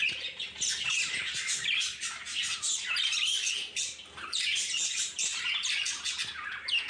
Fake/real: real